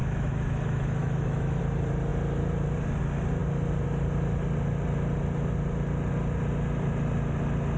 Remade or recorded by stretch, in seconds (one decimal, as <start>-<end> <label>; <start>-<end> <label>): 0.0-1.6 remade; 1.6-7.8 recorded